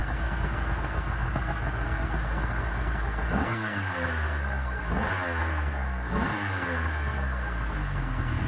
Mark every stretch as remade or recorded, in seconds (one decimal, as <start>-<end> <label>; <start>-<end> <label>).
0.0-4.8 remade; 4.8-5.4 recorded; 5.4-8.5 remade